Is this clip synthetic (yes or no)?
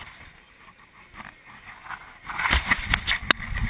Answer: no